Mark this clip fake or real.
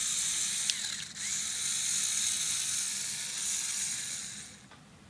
real